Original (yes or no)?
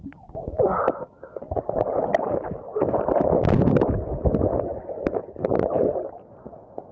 yes